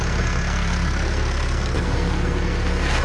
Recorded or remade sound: remade